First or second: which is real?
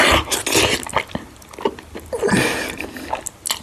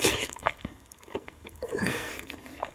first